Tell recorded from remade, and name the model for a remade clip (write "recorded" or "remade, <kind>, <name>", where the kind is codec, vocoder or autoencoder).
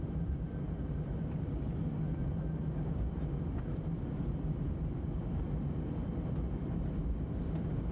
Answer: recorded